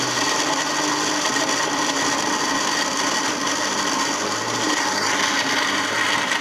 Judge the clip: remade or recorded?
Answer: recorded